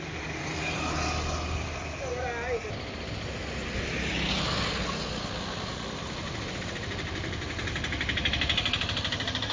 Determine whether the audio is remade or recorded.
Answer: recorded